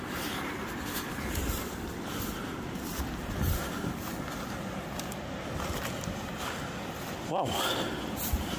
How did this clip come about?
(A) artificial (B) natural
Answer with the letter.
B